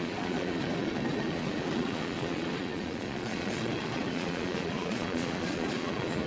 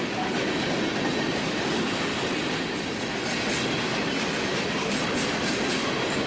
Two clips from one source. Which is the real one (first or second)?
second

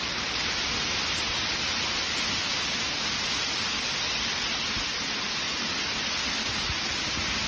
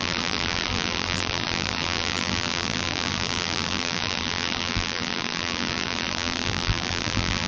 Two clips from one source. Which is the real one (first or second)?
first